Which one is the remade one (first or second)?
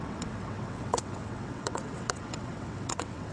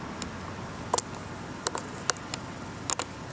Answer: first